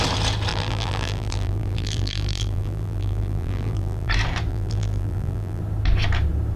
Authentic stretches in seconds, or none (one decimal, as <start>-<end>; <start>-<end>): 0.0-0.5; 4.1-4.5; 5.6-6.6